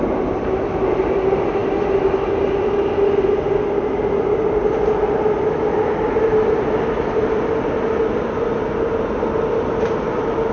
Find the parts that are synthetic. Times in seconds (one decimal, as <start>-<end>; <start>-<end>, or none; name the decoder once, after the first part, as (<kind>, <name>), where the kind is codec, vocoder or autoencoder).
none